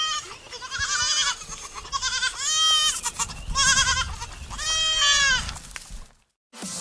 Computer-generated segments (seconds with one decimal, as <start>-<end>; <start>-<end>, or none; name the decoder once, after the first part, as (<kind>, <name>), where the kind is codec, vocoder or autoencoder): none